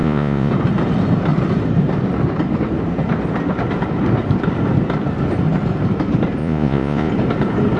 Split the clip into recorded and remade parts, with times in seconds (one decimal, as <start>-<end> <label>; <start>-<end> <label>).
0.0-0.5 remade; 0.5-6.4 recorded; 6.4-7.1 remade; 7.1-7.8 recorded